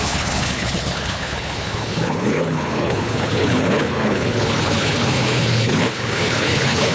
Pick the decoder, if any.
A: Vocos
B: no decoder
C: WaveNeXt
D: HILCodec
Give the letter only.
D